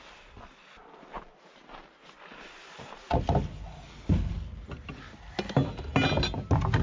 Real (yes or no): yes